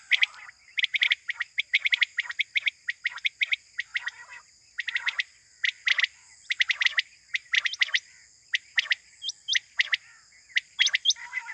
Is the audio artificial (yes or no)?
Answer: no